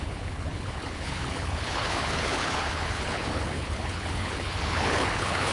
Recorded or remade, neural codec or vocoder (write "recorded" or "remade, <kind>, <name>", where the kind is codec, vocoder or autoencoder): remade, codec, HILCodec